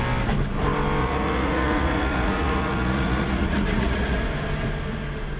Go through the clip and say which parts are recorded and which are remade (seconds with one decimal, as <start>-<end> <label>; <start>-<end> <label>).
0.0-1.0 recorded; 1.0-4.2 remade; 4.2-5.4 recorded